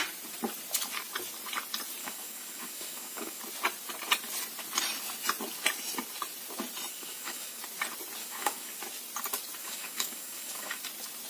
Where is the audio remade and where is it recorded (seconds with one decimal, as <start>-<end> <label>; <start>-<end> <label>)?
0.0-2.0 recorded; 2.0-3.4 remade; 3.4-6.9 recorded; 6.9-7.6 remade; 7.6-8.2 recorded; 8.2-8.8 remade; 8.8-9.6 recorded; 9.6-10.8 remade; 10.8-11.3 recorded